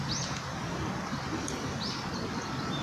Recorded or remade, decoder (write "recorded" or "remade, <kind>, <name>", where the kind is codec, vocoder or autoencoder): recorded